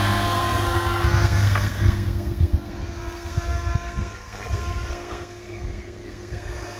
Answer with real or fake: fake